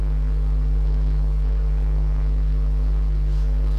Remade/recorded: remade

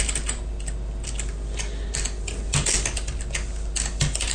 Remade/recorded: recorded